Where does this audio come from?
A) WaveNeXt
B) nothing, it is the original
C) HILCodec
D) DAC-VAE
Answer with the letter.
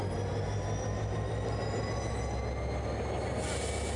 B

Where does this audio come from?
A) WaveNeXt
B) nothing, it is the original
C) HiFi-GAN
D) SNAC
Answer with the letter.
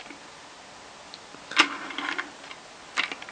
B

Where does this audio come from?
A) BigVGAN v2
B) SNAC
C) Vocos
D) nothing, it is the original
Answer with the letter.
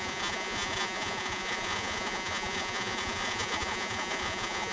C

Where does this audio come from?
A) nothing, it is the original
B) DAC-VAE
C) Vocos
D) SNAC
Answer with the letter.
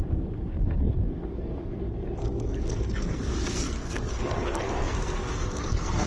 D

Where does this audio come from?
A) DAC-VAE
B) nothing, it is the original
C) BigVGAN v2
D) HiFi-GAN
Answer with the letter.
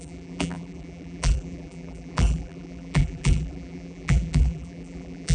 C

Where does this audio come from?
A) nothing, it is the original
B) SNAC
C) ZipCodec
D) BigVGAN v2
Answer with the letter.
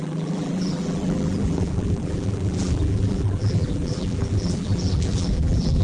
D